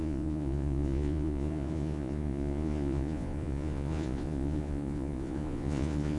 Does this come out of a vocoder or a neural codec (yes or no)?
yes